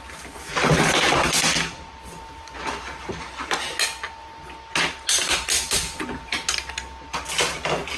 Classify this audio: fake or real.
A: real